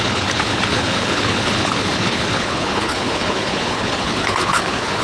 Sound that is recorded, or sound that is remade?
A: remade